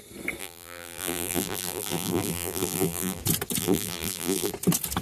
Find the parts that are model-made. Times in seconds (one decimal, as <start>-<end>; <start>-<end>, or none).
0.4-3.2; 3.6-4.5